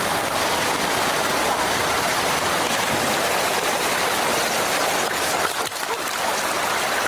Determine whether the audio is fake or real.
real